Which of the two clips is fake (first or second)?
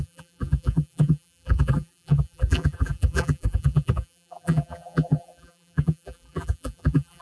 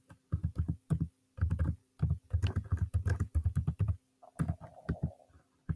first